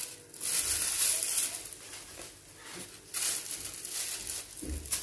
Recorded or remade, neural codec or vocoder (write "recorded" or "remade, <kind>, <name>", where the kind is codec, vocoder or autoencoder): recorded